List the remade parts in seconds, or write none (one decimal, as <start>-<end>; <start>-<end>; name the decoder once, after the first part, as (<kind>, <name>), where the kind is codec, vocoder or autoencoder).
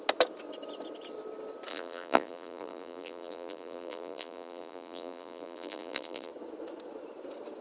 1.7-6.3 (vocoder, BigVGAN v2)